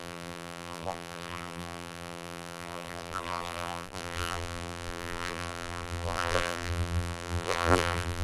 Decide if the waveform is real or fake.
fake